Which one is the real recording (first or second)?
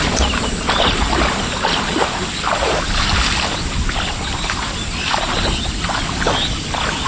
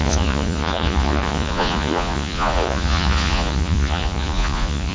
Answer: first